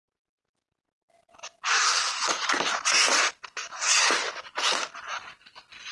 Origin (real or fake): real